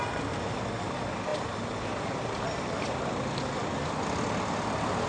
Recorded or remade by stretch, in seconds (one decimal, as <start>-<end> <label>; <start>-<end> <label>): 0.0-5.1 recorded